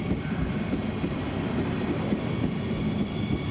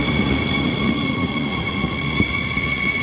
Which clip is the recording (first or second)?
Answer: first